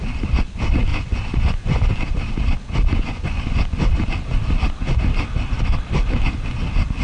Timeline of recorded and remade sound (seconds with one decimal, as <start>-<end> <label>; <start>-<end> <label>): 0.0-0.9 recorded; 0.9-1.9 remade; 1.9-2.9 recorded; 2.9-3.9 remade; 3.9-7.0 recorded